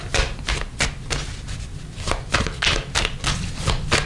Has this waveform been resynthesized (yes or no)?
no